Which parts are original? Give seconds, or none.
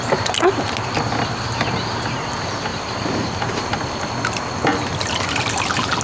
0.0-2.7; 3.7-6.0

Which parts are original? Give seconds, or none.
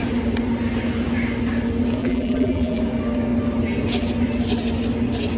0.0-2.0; 2.8-5.4